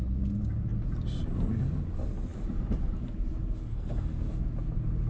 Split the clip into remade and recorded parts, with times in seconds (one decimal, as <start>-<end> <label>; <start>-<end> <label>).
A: 0.0-3.7 recorded; 3.7-4.4 remade; 4.4-5.1 recorded